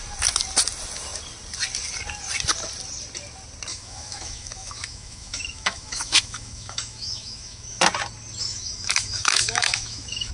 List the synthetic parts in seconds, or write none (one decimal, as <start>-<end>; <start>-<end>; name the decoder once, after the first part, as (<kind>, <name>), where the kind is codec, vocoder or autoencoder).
3.7-7.8 (autoencoder, DAC-VAE); 8.5-10.3